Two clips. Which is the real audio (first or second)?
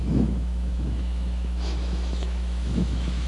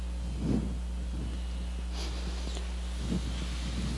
second